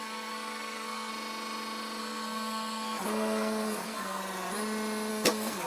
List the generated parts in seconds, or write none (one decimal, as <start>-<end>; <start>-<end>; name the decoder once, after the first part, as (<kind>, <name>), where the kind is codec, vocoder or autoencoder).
0.0-1.1 (codec, SNAC); 2.0-4.2; 5.1-5.7